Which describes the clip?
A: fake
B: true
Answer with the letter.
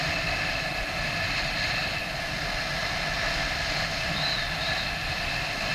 B